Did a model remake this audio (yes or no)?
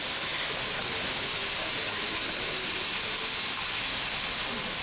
no